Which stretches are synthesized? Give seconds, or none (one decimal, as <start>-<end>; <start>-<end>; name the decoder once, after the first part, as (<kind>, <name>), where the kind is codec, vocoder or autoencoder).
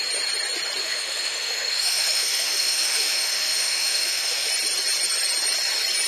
0.8-4.5 (autoencoder, DAC-VAE)